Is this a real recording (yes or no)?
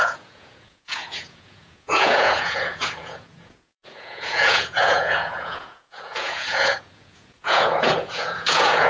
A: no